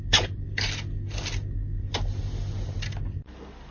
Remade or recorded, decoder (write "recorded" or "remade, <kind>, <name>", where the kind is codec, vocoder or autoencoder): recorded